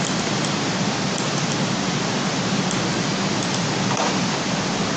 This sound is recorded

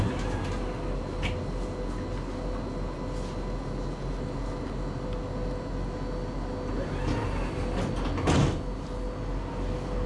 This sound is recorded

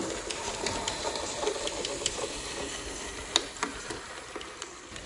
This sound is recorded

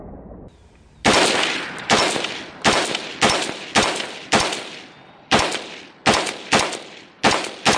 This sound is recorded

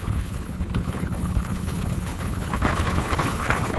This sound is remade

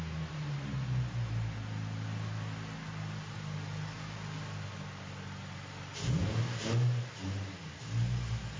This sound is recorded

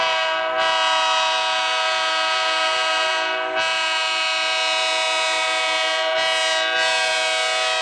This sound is recorded